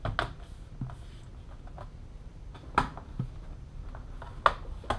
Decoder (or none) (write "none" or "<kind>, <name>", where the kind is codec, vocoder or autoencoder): none